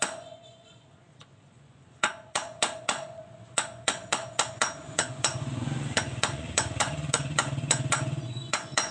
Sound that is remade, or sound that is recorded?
remade